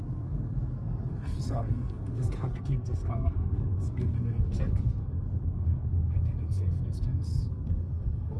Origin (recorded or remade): remade